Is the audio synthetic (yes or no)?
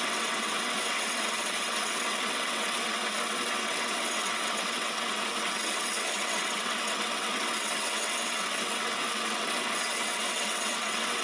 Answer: yes